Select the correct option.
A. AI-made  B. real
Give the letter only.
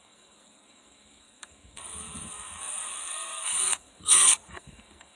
A